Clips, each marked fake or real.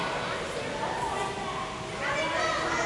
real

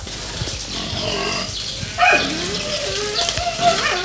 real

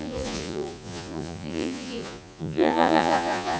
fake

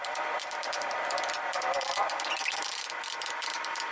fake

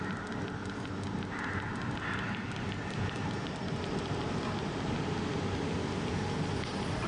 real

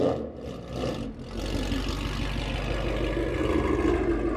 real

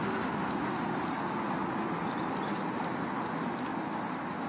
real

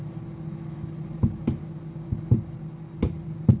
real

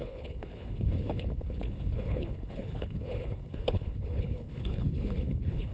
fake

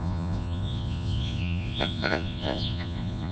fake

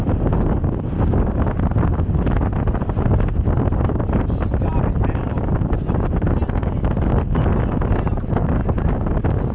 real